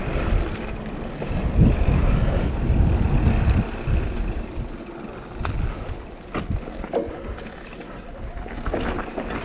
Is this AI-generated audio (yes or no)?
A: no